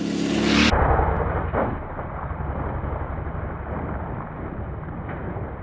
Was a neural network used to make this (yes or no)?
no